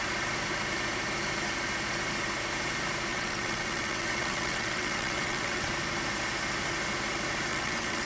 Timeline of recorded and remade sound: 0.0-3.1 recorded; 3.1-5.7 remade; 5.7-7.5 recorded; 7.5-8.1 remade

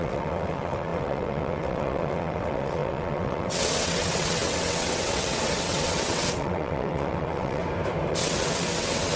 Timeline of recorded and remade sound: 0.0-7.6 remade; 7.6-8.1 recorded; 8.1-9.2 remade

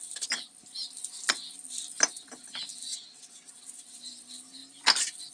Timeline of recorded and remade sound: 0.0-2.9 recorded; 2.9-3.5 remade; 3.5-5.3 recorded

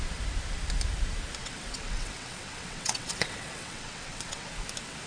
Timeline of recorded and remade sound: 0.0-1.4 recorded; 1.4-4.5 remade; 4.5-5.1 recorded